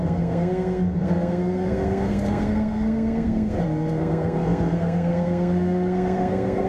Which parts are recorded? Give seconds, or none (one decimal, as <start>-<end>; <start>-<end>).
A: none